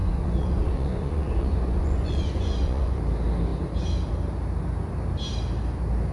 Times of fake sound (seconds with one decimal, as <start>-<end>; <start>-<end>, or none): 0.0-3.0